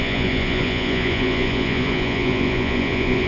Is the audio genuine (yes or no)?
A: no